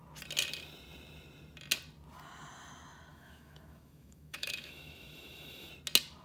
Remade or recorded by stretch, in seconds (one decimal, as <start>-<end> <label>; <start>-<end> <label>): 0.0-3.1 recorded; 3.1-5.7 remade; 5.7-6.2 recorded